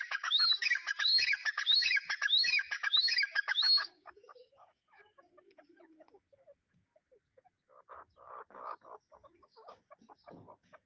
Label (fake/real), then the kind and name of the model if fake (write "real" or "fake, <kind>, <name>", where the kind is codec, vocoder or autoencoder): fake, codec, DAC